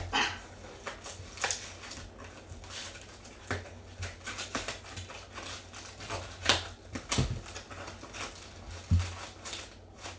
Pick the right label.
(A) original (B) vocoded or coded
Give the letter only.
A